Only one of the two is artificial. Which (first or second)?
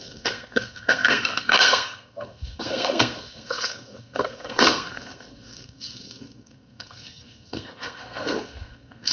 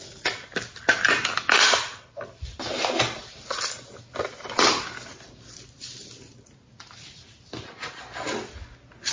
first